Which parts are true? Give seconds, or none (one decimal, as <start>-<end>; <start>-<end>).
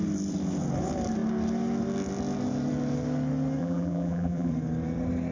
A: 0.0-3.6; 4.5-5.3